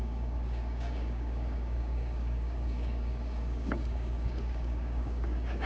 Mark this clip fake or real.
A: fake